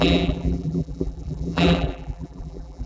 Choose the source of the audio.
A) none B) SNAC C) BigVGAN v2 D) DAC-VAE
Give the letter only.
C